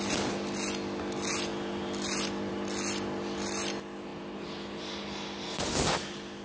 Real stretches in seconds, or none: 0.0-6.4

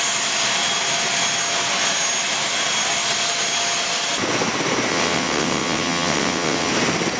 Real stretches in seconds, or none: 0.0-4.9; 6.7-7.2

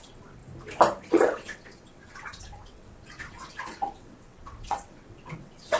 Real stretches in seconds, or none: 0.4-1.1

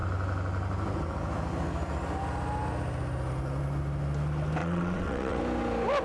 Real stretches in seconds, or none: 0.0-4.6; 5.4-6.0